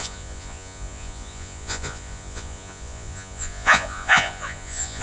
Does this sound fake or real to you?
fake